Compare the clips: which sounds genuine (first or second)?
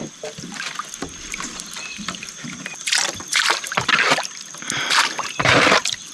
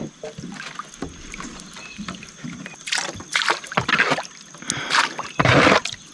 second